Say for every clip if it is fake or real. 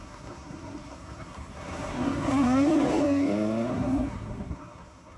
fake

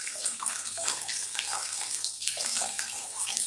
fake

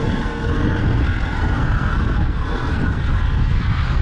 fake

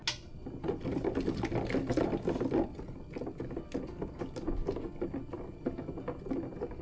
real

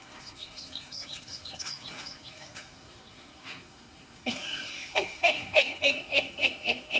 fake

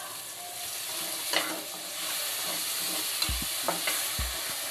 real